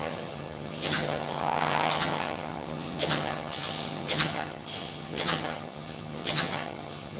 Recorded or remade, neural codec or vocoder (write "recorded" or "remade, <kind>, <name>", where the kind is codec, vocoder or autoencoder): remade, vocoder, HiFi-GAN